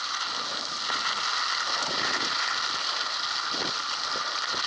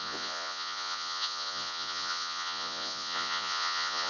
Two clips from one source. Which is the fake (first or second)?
second